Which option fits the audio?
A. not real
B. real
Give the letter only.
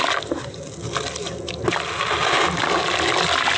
B